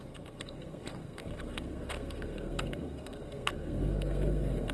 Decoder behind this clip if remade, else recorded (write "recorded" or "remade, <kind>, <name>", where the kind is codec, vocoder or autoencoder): remade, codec, SNAC